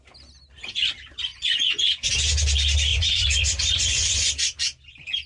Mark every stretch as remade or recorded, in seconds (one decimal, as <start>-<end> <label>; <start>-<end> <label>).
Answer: 0.0-1.3 recorded; 1.3-2.1 remade; 2.1-2.9 recorded; 2.9-4.3 remade; 4.3-5.3 recorded